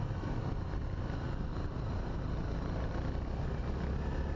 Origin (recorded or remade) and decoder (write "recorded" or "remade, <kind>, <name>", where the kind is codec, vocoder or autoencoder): recorded